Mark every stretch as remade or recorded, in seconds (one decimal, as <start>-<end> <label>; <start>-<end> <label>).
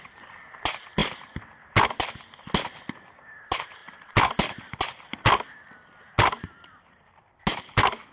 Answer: 0.0-8.1 recorded